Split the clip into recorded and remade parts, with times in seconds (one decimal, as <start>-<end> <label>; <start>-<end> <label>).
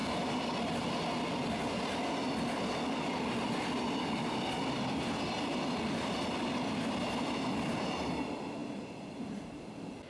0.0-10.1 recorded